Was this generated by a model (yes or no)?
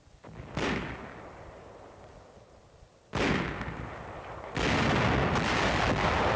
no